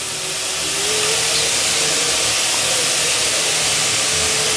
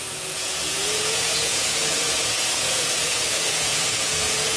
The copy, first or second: second